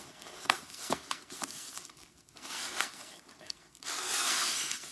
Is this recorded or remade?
remade